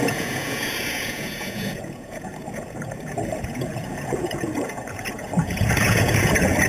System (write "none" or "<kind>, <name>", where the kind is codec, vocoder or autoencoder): vocoder, Vocos